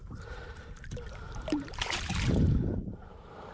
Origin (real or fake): fake